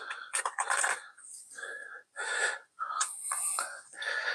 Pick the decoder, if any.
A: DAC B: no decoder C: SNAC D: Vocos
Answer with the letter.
D